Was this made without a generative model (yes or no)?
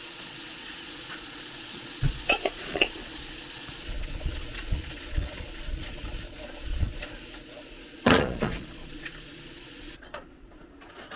no